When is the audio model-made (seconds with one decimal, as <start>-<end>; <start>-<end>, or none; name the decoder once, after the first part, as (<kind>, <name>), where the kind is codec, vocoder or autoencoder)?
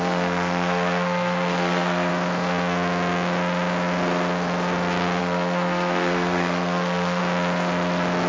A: 0.0-2.1 (codec, SNAC); 5.2-7.2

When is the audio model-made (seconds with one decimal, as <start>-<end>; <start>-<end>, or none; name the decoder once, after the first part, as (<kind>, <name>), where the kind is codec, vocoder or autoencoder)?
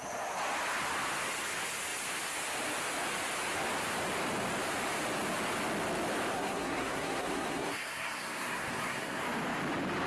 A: 6.3-9.2 (codec, SNAC)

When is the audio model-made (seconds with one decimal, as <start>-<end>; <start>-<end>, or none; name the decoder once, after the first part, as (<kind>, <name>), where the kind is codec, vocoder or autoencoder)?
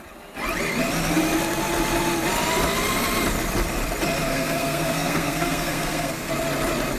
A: 4.3-6.3 (codec, SNAC)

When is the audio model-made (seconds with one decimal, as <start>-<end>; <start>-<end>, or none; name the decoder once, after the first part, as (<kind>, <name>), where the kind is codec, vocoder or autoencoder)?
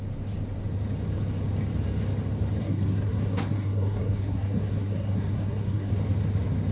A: 2.6-5.9 (codec, SNAC)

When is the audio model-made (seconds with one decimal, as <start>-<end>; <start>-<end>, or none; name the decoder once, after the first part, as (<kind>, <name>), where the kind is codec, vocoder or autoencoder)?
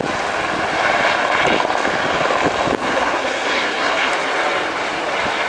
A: 2.8-4.1 (codec, SNAC)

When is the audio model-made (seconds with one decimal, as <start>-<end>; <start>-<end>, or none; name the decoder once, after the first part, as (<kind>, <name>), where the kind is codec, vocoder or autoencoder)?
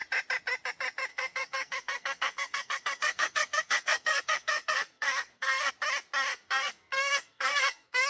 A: 1.1-5.7 (codec, SNAC); 6.3-8.1